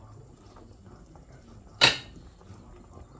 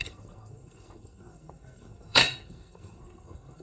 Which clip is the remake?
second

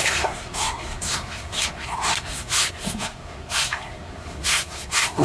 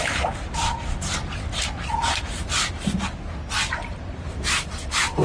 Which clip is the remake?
first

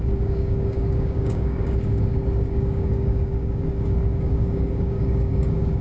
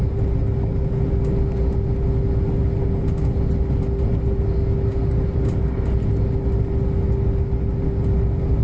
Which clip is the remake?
first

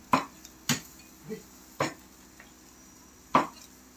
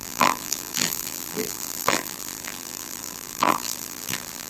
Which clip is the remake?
second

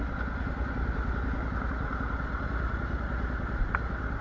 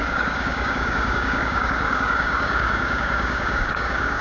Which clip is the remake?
second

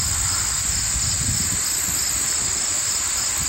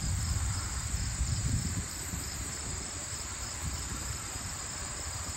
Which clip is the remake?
second